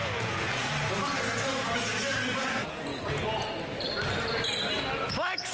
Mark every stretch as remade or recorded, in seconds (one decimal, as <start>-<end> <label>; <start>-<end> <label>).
0.0-0.7 remade; 0.7-2.9 recorded; 2.9-3.5 remade; 3.5-5.5 recorded